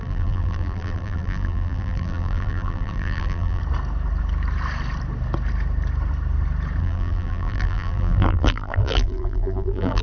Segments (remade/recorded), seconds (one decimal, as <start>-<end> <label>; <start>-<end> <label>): 0.0-3.6 remade; 3.6-6.8 recorded; 6.8-10.0 remade